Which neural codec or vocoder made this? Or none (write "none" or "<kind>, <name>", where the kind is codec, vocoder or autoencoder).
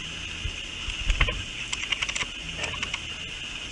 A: none